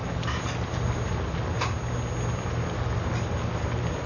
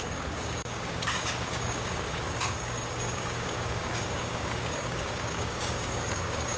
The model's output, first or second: second